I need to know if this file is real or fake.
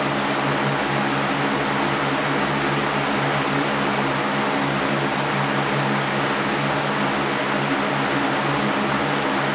real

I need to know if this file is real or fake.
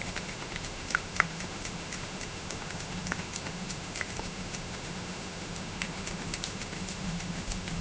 fake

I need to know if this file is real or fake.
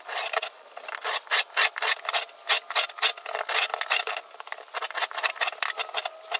real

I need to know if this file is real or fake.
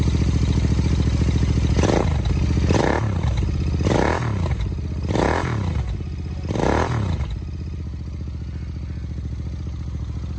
real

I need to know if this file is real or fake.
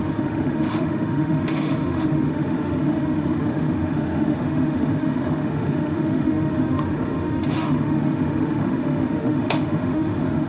fake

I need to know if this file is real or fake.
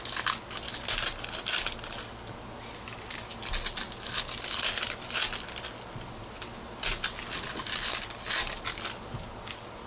real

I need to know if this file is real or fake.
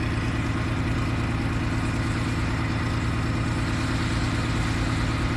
real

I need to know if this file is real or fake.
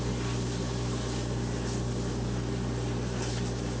real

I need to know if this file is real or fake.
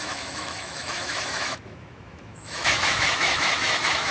fake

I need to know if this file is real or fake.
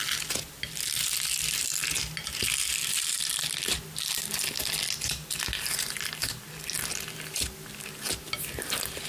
real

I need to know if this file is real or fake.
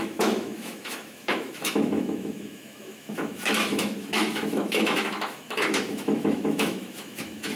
fake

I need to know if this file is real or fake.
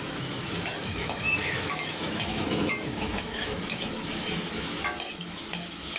fake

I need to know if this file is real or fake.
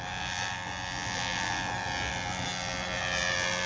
real